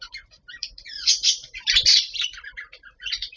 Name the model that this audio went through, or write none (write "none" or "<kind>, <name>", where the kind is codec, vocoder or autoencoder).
vocoder, BigVGAN v2